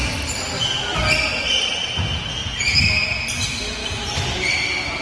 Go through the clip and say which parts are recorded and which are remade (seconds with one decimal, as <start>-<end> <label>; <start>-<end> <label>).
0.0-5.0 recorded